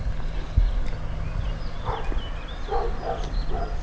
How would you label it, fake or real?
real